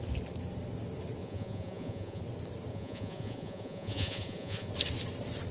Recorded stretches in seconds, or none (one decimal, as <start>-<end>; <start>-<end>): 0.0-1.2; 2.2-2.7; 4.7-5.5